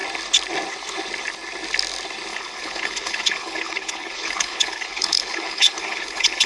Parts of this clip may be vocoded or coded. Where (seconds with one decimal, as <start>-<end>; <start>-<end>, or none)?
2.3-6.5